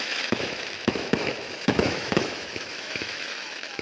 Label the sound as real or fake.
fake